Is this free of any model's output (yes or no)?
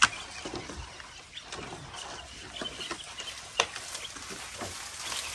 yes